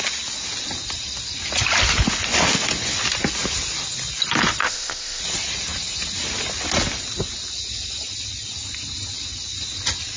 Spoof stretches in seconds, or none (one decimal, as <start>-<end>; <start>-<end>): 4.6-5.2